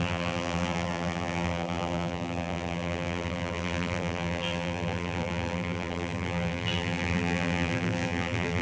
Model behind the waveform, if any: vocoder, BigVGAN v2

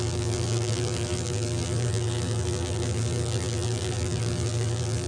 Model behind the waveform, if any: vocoder, BigVGAN v2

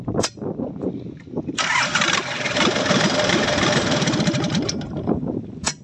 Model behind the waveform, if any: vocoder, BigVGAN v2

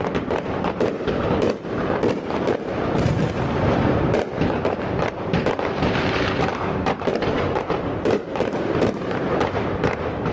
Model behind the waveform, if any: vocoder, BigVGAN v2